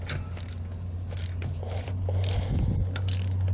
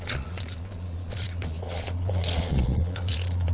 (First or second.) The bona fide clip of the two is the first